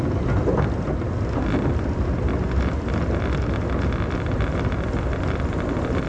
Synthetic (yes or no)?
no